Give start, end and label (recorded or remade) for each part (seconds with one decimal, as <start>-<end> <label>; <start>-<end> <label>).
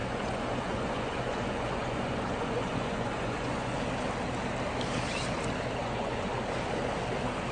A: 0.0-3.8 remade; 3.8-5.8 recorded; 5.8-6.3 remade; 6.3-7.5 recorded